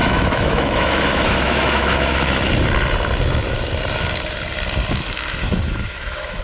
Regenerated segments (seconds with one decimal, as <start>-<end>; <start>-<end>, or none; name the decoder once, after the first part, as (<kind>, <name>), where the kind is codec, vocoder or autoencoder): 0.0-2.5 (autoencoder, DAC-VAE); 5.4-6.4